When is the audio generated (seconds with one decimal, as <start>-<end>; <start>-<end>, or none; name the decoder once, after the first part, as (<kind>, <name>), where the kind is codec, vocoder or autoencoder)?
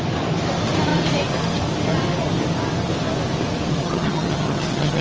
3.8-5.0 (vocoder, HiFi-GAN)